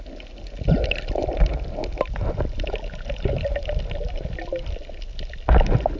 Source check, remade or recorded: recorded